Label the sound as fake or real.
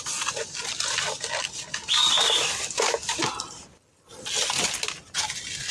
real